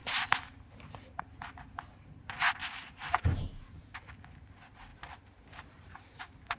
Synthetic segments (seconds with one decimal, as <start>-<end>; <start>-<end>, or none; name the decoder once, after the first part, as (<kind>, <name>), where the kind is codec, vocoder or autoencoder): 0.0-1.5 (vocoder, BigVGAN v2); 2.6-3.9; 4.9-6.6

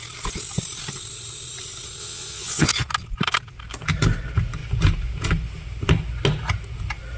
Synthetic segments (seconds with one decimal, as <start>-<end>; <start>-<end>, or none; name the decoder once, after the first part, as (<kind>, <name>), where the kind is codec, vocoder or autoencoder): 2.0-2.7 (vocoder, WaveNeXt)

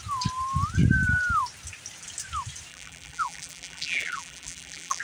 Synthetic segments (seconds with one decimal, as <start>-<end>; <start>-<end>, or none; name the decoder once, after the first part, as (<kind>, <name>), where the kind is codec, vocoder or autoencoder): 2.7-5.0 (vocoder, BigVGAN v2)

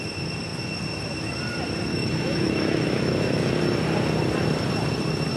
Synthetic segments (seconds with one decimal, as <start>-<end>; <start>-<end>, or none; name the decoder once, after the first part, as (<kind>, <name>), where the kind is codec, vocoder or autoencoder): 1.9-3.5 (autoencoder, DAC-VAE)

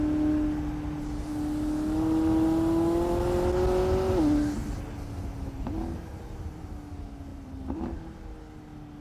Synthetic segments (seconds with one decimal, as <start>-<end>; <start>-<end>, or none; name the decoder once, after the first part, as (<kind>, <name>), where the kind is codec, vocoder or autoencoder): 5.8-6.6 (vocoder, BigVGAN v2); 7.3-8.2

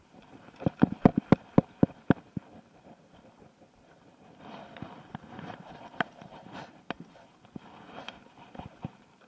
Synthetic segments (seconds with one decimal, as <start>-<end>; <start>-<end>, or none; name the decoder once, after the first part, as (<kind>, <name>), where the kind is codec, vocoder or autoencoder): 0.0-1.1 (vocoder, BigVGAN v2); 5.2-9.3

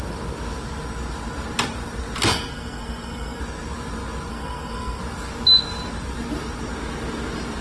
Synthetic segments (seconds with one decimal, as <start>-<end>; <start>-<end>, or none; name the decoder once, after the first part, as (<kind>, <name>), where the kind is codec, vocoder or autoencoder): 2.3-3.4 (codec, SNAC); 4.3-5.0